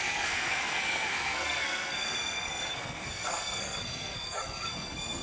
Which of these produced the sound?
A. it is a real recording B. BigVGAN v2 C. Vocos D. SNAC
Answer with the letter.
D